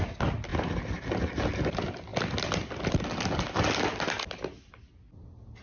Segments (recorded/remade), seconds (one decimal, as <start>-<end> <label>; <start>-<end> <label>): 0.0-5.6 recorded